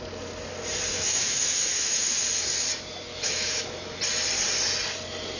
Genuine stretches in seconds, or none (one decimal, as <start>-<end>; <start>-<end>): 0.0-0.9; 2.2-3.1; 4.0-5.4